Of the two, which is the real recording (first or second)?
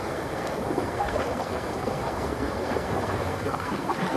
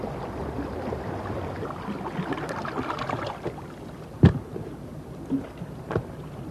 second